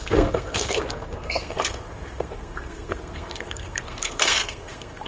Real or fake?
fake